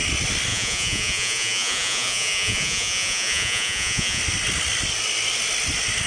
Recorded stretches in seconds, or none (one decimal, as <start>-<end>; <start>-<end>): 0.0-0.5; 4.2-6.1